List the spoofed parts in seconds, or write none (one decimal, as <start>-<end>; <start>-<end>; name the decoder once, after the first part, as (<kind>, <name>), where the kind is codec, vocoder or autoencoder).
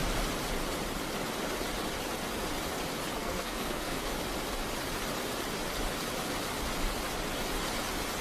3.2-4.1 (codec, SNAC)